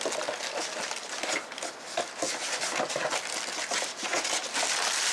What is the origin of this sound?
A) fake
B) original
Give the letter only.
B